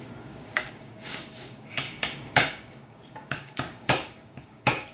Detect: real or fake fake